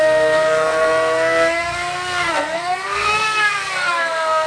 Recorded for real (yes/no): no